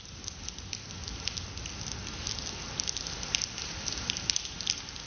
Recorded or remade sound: recorded